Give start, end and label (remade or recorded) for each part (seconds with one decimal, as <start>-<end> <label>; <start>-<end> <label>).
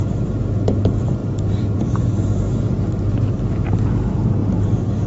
0.0-5.1 recorded